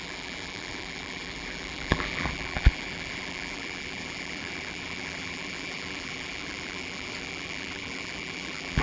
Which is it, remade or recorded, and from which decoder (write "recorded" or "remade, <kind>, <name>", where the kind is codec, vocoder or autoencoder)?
remade, vocoder, BigVGAN v2